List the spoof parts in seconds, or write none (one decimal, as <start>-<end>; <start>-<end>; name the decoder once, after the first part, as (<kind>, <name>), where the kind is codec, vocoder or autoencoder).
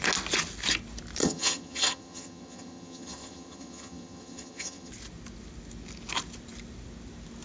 1.2-4.9 (vocoder, HiFi-GAN)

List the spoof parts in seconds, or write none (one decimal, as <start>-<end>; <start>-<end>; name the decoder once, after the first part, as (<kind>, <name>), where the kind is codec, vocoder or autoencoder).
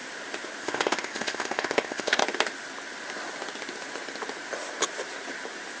0.6-2.2 (codec, ZipCodec)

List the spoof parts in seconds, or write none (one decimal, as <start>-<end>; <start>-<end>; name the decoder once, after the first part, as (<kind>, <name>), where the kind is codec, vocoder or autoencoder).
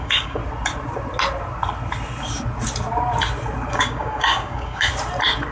0.0-0.4 (codec, DAC); 3.7-4.9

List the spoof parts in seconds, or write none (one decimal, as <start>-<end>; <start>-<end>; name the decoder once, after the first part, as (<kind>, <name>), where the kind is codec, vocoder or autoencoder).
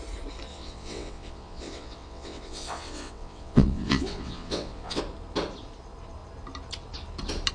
0.5-5.0 (vocoder, WaveNeXt)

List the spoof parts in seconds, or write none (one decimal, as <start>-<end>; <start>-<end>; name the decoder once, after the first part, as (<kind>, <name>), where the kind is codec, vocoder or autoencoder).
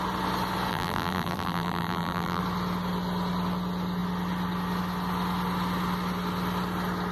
0.7-2.4 (vocoder, BigVGAN v2)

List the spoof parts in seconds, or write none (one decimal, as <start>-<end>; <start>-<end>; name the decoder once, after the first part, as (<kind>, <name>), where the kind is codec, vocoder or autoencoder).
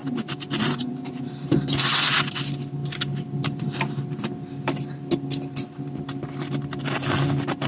0.0-2.3 (vocoder, BigVGAN v2)